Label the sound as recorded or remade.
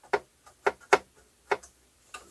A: recorded